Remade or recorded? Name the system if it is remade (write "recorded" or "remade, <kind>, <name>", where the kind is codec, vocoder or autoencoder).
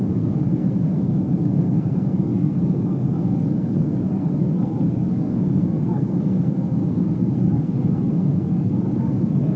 remade, codec, SNAC